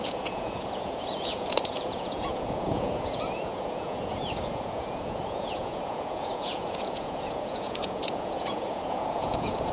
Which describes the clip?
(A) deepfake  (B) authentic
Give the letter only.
A